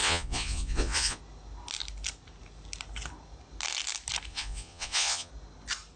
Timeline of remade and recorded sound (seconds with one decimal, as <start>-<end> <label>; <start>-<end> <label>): 0.0-1.2 remade; 1.2-4.3 recorded; 4.3-5.3 remade; 5.3-6.0 recorded